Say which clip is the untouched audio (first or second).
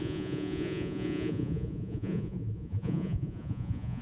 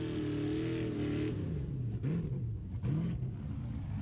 second